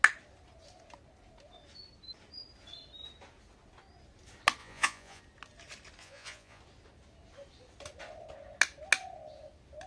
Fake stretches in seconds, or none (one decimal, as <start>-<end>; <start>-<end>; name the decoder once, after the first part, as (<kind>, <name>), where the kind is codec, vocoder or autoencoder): 4.6-5.2 (vocoder, Vocos); 6.0-6.6